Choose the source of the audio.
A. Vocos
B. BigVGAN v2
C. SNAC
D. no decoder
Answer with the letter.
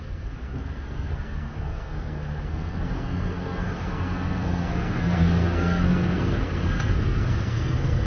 C